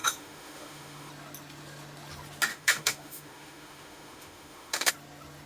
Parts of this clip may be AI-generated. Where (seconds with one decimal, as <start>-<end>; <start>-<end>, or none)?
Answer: 0.0-1.1; 2.5-4.9